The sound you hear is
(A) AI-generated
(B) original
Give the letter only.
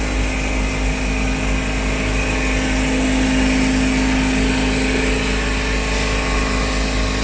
B